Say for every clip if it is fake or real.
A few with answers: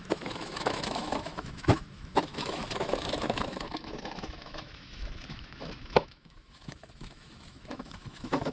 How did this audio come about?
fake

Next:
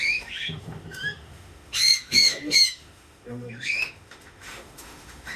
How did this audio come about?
fake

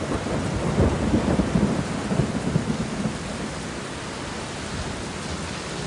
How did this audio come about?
real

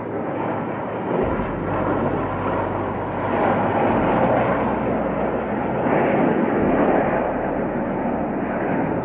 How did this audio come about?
real